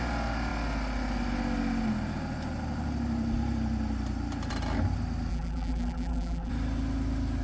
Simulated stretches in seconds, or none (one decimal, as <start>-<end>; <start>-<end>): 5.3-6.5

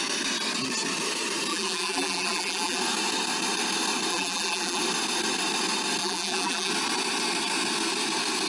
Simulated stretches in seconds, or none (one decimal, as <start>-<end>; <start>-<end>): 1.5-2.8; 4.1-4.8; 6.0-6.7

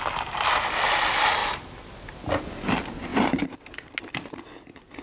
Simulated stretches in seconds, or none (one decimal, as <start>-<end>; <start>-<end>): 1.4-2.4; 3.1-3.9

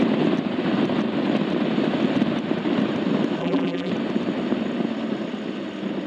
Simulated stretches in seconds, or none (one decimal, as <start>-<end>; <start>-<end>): 3.4-3.9

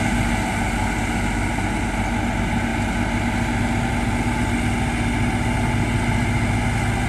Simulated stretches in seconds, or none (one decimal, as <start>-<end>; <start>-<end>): none